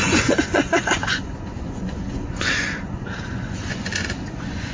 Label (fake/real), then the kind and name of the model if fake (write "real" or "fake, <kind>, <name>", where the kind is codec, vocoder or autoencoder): fake, vocoder, Vocos